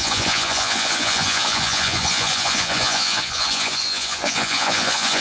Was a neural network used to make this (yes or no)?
yes